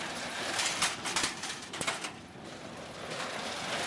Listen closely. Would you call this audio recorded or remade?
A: remade